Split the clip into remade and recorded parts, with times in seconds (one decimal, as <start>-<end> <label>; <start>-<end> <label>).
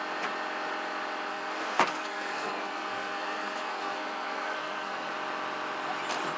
0.0-1.3 recorded; 1.3-5.1 remade; 5.1-6.4 recorded